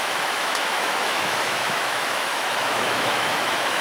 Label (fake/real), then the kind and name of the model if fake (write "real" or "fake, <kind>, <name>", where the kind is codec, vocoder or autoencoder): fake, autoencoder, DAC-VAE